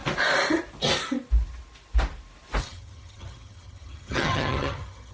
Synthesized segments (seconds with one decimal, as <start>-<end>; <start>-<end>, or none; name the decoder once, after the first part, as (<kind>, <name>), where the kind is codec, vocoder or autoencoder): 2.6-5.1 (vocoder, HiFi-GAN)